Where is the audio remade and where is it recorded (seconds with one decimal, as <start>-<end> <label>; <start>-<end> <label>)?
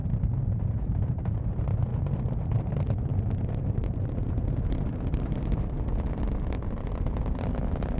0.0-1.4 remade; 1.4-1.9 recorded; 1.9-2.7 remade; 2.7-3.1 recorded; 3.1-5.9 remade; 5.9-8.0 recorded